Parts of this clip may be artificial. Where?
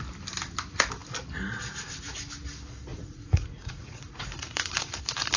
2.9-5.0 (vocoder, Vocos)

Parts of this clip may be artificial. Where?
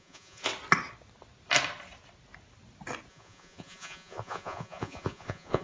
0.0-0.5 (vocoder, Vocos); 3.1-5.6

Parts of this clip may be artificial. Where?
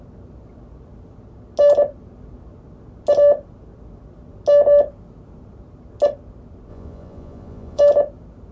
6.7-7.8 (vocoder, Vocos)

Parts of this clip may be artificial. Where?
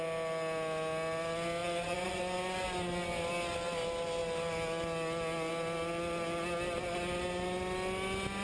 1.6-2.2 (vocoder, Vocos)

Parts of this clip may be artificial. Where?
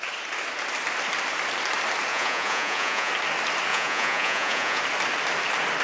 2.1-3.1 (vocoder, Vocos); 3.7-4.8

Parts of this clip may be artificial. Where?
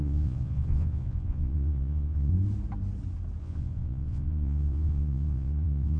0.0-2.3 (vocoder, Vocos); 3.4-6.0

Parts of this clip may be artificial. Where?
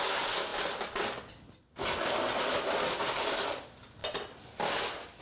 none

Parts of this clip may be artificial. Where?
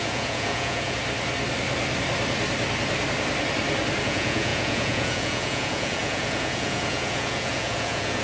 0.0-1.0 (vocoder, Vocos); 4.0-8.2